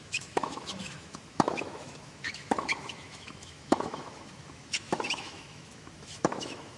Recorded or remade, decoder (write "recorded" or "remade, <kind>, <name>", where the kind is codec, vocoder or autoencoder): remade, autoencoder, DAC-VAE